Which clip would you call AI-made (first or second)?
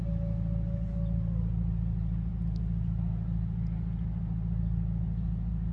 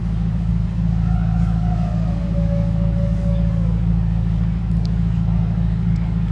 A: second